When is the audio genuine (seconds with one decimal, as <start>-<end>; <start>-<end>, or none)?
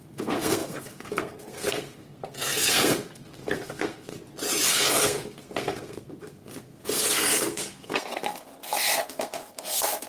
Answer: 4.1-4.7